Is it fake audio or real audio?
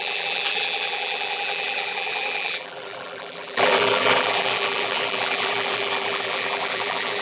fake